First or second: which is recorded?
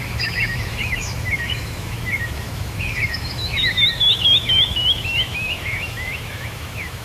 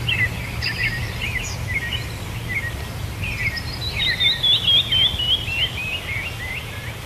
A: second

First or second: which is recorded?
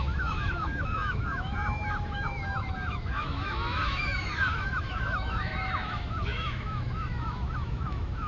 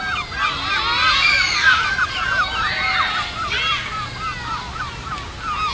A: second